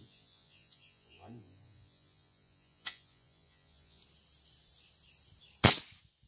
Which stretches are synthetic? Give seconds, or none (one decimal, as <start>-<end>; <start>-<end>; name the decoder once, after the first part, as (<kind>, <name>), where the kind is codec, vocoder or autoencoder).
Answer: 0.0-4.0 (vocoder, Vocos)